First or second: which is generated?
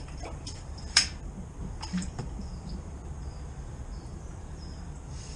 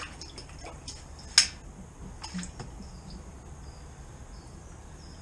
first